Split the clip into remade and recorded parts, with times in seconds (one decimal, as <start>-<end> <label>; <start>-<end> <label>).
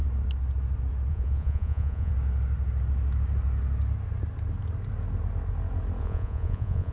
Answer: 0.0-1.1 recorded; 1.1-2.1 remade; 2.1-6.0 recorded; 6.0-6.9 remade